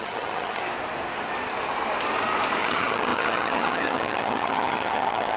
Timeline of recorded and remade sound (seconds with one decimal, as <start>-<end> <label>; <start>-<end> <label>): 0.0-0.6 remade; 0.6-2.6 recorded; 2.6-5.4 remade